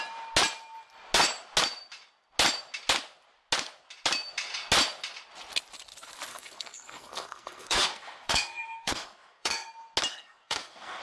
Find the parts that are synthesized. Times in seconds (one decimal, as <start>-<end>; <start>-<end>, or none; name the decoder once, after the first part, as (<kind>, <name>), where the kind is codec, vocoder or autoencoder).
6.3-9.7 (codec, SNAC); 10.1-11.0